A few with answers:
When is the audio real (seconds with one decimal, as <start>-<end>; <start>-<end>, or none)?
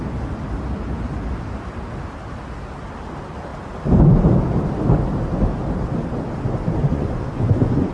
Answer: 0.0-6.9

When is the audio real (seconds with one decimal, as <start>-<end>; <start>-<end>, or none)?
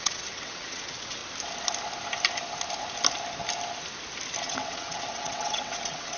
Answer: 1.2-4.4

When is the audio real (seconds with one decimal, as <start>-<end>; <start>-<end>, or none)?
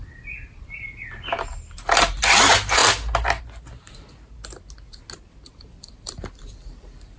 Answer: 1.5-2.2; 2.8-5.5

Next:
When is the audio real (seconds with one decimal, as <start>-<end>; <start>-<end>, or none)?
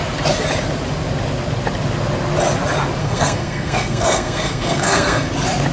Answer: 0.0-3.0; 5.3-5.7